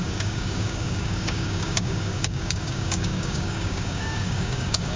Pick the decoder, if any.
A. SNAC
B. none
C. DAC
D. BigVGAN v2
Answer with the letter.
C